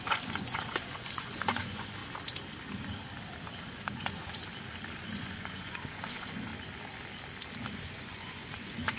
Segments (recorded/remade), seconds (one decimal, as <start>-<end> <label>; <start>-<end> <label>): 0.0-2.0 remade; 2.0-3.6 recorded; 3.6-4.4 remade; 4.4-5.0 recorded; 5.0-6.5 remade; 6.5-7.7 recorded; 7.7-9.0 remade